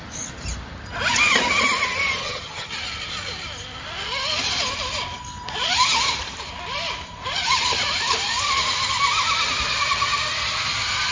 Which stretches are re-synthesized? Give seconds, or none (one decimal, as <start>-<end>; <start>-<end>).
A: 2.2-2.7